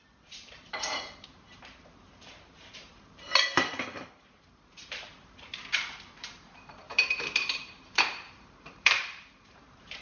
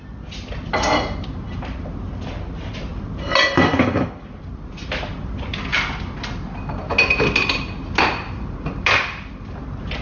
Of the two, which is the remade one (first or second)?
first